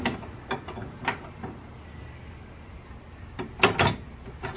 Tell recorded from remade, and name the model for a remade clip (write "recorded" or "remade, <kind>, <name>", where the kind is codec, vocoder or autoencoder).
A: recorded